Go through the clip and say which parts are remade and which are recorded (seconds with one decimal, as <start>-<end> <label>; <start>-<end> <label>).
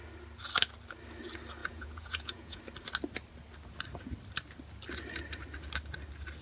0.0-1.6 recorded; 1.6-2.6 remade; 2.6-6.4 recorded